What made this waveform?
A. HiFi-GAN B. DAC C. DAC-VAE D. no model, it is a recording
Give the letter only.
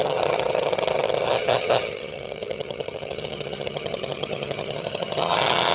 A